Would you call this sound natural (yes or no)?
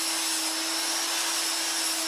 yes